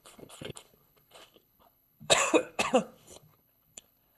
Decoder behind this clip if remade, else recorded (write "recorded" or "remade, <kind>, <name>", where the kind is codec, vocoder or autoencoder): remade, codec, HILCodec